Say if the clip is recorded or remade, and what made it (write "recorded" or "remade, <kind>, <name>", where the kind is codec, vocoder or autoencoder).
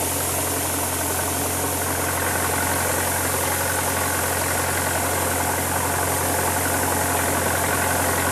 recorded